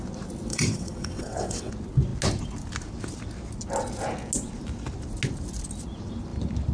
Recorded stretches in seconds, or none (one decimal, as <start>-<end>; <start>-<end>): 0.0-0.5; 1.7-6.7